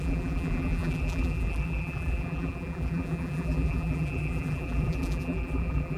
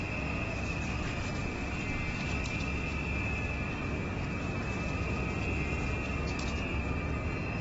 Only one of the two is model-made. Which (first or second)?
first